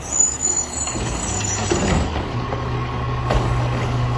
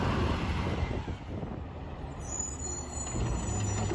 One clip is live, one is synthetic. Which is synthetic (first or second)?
first